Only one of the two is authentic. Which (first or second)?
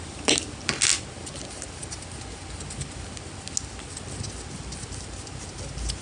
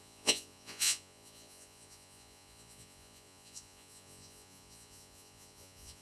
first